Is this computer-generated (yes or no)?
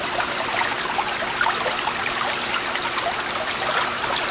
no